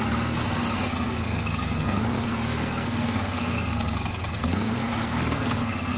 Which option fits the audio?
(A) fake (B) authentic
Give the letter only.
A